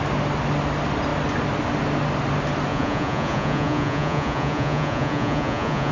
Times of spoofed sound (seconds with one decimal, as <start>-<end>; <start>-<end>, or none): 2.7-5.9